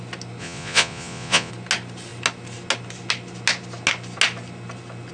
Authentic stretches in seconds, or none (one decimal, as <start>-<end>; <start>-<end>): 0.0-0.4; 1.5-5.1